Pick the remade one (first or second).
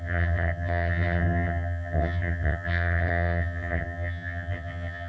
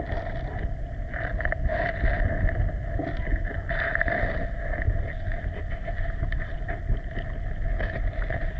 first